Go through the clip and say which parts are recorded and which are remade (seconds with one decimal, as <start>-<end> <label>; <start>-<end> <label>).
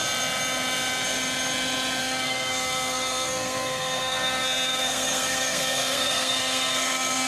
0.0-2.0 recorded; 2.0-7.3 remade